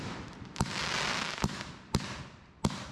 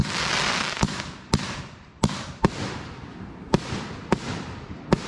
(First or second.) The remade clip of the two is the second